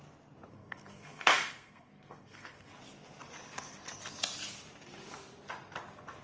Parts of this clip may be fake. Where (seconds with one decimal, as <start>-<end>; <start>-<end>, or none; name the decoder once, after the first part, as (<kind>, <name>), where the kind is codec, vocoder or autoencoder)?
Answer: 0.5-2.7 (codec, SNAC)

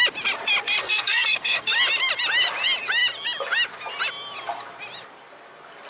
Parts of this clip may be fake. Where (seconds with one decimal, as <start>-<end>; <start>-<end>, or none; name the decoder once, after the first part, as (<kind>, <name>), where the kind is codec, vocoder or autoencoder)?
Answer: 0.8-1.7 (codec, SNAC)